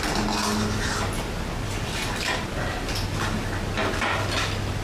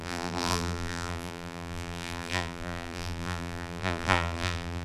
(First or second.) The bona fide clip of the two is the first